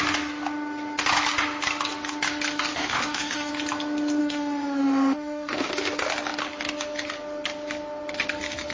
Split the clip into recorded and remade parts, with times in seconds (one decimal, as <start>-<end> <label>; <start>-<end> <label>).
0.0-2.7 recorded; 2.7-3.5 remade; 3.5-4.2 recorded; 4.2-5.7 remade; 5.7-8.7 recorded